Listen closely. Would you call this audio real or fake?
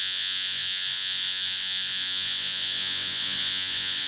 fake